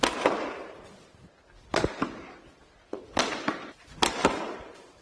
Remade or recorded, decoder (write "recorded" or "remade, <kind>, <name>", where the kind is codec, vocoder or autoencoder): recorded